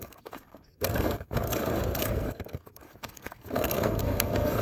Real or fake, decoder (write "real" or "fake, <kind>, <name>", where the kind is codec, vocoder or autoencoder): fake, codec, SNAC